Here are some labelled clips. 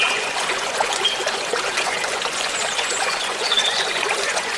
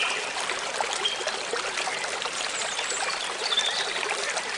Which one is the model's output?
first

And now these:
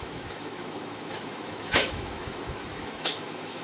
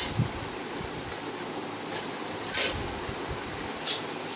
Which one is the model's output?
first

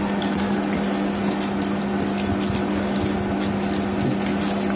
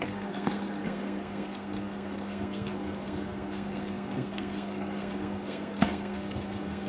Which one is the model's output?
second